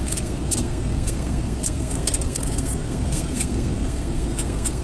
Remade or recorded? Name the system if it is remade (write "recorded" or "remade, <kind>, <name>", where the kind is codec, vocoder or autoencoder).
remade, codec, SNAC